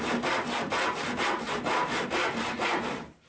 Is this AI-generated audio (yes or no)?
yes